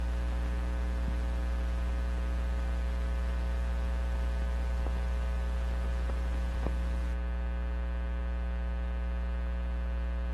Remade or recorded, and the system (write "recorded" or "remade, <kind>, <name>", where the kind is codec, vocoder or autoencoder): recorded